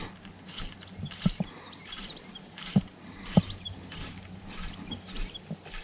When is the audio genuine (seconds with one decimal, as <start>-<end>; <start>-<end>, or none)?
0.0-1.8; 4.8-5.8